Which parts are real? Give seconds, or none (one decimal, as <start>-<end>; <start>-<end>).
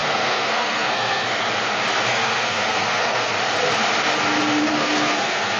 1.4-2.1; 3.3-4.7